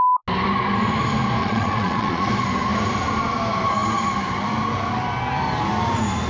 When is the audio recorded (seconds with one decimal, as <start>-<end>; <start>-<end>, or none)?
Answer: 0.0-1.4; 2.3-6.3